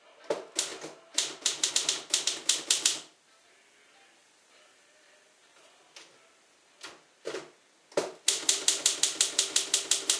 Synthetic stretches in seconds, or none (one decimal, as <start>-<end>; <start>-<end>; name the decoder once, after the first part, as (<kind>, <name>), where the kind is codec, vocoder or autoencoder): 4.2-7.4 (vocoder, BigVGAN v2)